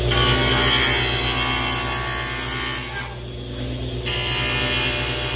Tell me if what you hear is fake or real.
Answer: real